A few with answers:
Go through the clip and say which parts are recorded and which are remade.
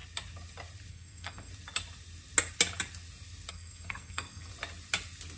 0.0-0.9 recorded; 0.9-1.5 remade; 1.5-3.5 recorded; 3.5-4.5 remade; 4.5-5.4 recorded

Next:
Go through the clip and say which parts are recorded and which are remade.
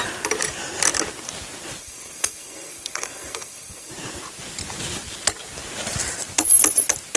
0.0-1.8 recorded; 1.8-3.9 remade; 3.9-7.2 recorded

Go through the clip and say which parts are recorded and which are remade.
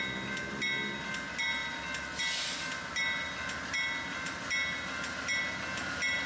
0.0-6.3 recorded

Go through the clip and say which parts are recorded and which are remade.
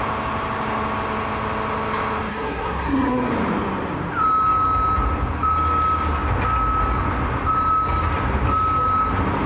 0.0-2.3 recorded; 2.3-3.3 remade; 3.3-9.5 recorded